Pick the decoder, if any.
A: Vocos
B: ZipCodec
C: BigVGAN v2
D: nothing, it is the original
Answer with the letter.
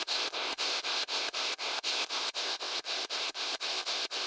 B